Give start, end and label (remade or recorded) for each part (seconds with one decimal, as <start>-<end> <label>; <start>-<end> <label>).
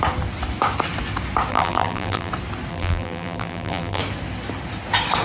0.0-1.5 recorded; 1.5-2.3 remade; 2.3-2.7 recorded; 2.7-4.0 remade; 4.0-5.2 recorded